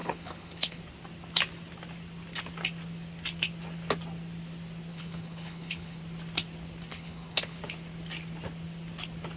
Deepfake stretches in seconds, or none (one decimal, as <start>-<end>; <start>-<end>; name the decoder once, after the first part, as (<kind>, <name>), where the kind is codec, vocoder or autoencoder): 0.0-0.8 (codec, HILCodec); 4.9-6.0; 6.9-7.6